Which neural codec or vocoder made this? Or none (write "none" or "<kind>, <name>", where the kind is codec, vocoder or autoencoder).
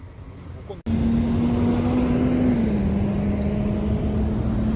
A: none